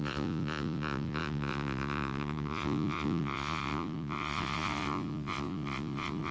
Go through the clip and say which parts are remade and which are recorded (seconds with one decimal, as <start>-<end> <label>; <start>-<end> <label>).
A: 0.0-6.3 remade